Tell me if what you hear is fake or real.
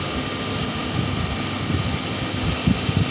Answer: real